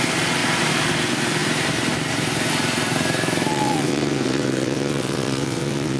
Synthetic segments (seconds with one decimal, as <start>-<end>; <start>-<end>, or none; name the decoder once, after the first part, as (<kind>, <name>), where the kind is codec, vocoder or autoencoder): 3.5-6.0 (vocoder, WaveNeXt)